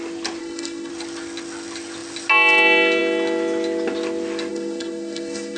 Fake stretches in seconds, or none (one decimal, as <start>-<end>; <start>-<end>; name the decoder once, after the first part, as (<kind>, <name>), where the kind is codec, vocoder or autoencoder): 0.4-0.9 (codec, SNAC); 4.5-5.6